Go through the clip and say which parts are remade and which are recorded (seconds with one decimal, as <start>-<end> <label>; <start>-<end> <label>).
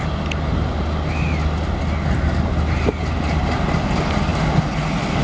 0.0-5.2 recorded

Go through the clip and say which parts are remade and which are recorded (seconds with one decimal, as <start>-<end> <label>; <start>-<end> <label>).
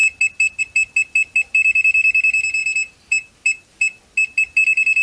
0.0-5.0 recorded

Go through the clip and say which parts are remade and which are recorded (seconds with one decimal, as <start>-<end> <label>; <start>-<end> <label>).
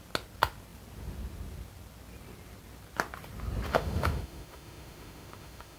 0.0-3.7 recorded; 3.7-5.8 remade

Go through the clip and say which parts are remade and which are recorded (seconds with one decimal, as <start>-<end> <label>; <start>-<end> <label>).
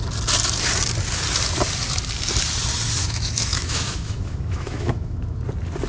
0.0-3.0 recorded; 3.0-5.4 remade; 5.4-5.9 recorded